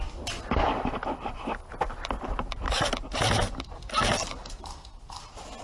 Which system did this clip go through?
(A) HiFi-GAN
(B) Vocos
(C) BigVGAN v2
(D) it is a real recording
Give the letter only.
D